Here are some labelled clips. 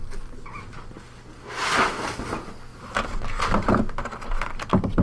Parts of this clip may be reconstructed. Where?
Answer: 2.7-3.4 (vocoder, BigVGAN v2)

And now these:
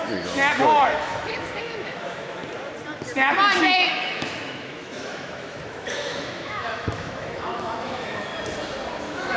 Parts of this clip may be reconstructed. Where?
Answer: 0.0-2.4 (autoencoder, DAC-VAE); 3.6-8.3; 9.0-9.4